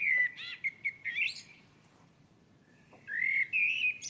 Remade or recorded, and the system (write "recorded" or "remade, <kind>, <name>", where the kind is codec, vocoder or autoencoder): remade, vocoder, BigVGAN v2